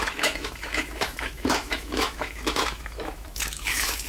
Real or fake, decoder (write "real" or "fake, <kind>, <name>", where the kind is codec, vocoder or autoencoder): fake, autoencoder, DAC-VAE